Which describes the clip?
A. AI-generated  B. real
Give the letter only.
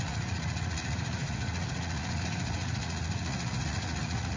A